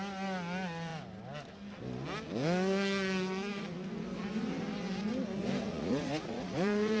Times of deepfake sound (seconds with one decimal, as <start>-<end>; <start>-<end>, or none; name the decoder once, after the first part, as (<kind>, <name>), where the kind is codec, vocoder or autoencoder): 5.7-7.0 (vocoder, Vocos)